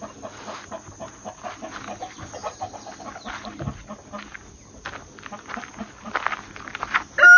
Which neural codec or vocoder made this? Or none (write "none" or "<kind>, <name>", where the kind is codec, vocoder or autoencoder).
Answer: none